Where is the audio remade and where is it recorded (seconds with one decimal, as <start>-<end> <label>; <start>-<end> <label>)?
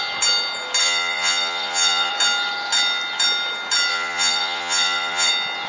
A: 0.0-0.8 recorded; 0.8-2.1 remade; 2.1-3.9 recorded; 3.9-5.3 remade; 5.3-5.7 recorded